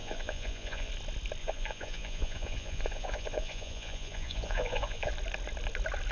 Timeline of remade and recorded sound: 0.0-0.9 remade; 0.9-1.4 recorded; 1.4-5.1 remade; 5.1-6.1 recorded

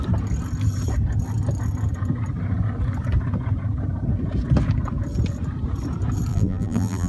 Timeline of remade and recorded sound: 0.0-6.3 recorded; 6.3-7.1 remade

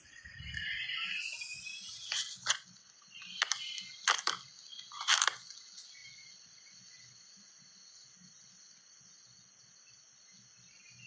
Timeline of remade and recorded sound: 0.0-11.1 recorded